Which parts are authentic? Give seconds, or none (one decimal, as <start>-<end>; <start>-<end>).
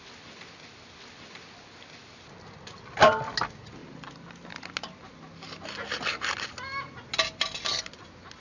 0.0-8.4